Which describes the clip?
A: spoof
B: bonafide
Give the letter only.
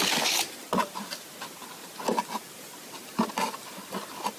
B